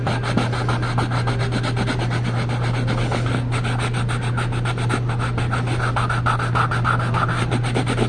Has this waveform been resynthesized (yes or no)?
no